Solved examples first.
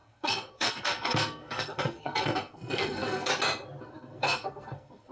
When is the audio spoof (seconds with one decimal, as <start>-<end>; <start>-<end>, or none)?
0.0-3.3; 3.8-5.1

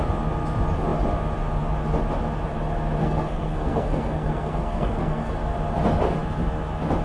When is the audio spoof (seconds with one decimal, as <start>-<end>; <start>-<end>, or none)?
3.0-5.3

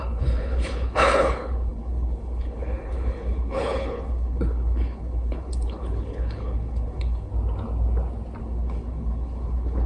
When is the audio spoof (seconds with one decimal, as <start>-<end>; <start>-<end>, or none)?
0.0-7.3; 8.4-9.9